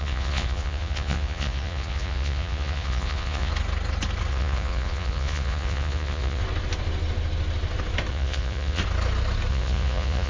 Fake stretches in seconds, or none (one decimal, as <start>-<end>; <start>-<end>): 0.0-3.5; 4.3-6.4; 8.1-8.8; 9.5-10.3